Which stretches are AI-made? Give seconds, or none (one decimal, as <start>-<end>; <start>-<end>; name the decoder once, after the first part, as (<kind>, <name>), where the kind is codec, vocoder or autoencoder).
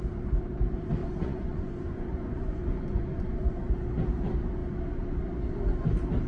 1.0-3.6 (vocoder, Vocos)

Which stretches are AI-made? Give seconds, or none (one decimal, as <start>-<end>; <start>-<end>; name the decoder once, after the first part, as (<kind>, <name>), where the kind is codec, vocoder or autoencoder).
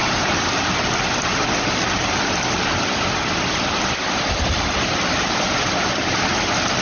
0.0-0.9 (vocoder, BigVGAN v2)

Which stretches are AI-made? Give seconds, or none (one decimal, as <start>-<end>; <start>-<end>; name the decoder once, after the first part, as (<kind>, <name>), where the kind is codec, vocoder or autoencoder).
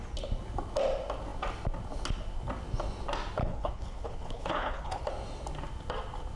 3.4-5.1 (codec, HILCodec)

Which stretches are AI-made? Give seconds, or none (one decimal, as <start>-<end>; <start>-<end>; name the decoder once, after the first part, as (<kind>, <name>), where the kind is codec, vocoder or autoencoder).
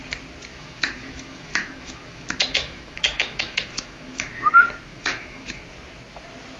0.5-4.5 (autoencoder, DAC-VAE); 4.9-5.6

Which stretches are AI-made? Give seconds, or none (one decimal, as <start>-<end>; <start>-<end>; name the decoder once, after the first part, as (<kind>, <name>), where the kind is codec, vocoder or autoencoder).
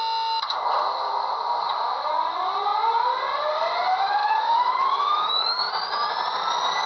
4.2-5.7 (autoencoder, DAC-VAE)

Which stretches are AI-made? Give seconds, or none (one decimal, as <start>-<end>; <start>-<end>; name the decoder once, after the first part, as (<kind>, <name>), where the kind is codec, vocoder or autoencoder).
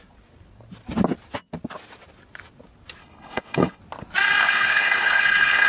3.0-3.8 (codec, HILCodec); 4.4-5.7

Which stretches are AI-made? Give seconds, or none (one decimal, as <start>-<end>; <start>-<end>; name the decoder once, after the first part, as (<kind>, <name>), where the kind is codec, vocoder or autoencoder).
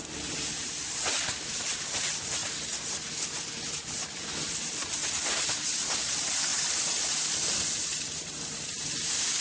0.0-2.4 (vocoder, BigVGAN v2); 3.7-5.0; 5.7-6.5; 7.3-9.4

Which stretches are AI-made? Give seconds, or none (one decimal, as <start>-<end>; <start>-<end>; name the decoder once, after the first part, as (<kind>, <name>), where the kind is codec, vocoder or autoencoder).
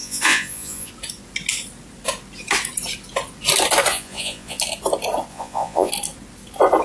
0.0-0.9 (vocoder, Vocos); 3.9-4.6; 5.3-5.9